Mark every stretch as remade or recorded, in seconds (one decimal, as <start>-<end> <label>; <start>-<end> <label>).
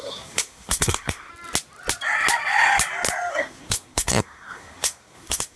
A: 0.0-1.3 remade; 1.3-3.3 recorded; 3.3-5.6 remade